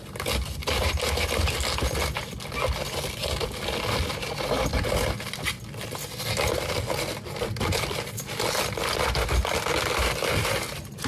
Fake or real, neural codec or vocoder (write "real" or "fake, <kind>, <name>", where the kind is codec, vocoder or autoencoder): real